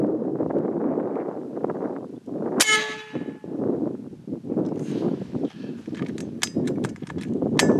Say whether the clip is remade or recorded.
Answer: recorded